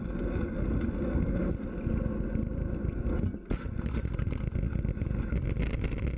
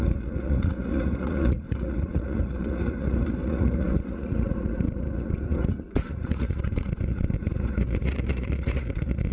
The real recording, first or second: first